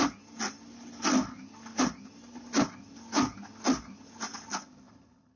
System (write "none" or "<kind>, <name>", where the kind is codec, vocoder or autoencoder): none